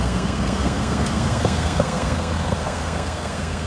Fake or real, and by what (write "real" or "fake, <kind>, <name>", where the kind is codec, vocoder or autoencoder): fake, codec, SNAC